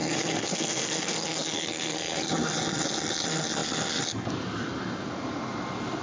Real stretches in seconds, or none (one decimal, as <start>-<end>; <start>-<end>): 2.3-6.0